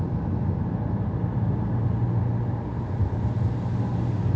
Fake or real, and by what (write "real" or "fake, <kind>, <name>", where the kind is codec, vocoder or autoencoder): real